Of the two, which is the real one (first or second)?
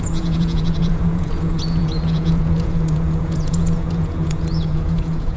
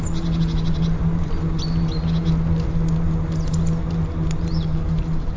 second